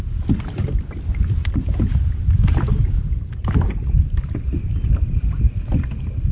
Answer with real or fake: real